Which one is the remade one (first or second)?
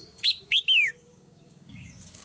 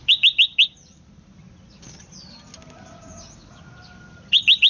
first